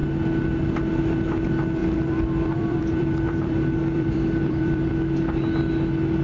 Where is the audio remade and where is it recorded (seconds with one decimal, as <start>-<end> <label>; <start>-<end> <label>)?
0.0-1.8 recorded; 1.8-4.9 remade; 4.9-6.2 recorded